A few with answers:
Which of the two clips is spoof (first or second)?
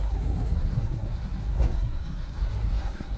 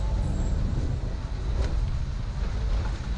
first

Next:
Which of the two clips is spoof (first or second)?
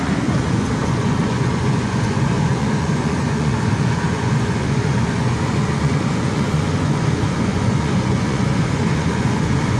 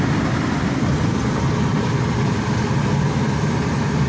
first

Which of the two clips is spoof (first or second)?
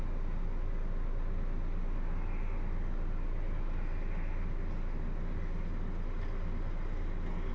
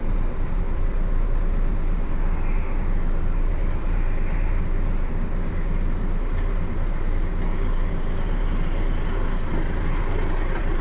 second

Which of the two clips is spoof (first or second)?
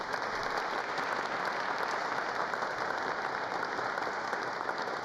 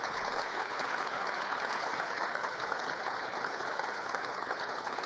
second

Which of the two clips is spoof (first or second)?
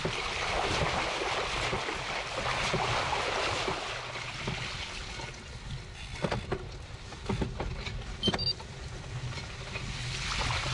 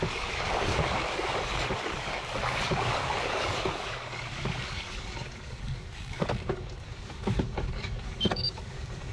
second